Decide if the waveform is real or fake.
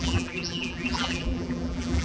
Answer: fake